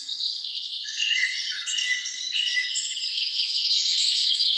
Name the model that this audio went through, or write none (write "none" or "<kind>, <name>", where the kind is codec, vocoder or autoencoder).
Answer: codec, SNAC